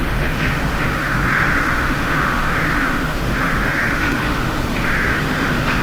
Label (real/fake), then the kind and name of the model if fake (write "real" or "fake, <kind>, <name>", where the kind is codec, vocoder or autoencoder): fake, autoencoder, DAC-VAE